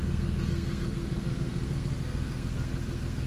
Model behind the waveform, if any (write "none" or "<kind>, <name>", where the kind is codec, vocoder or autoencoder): codec, SNAC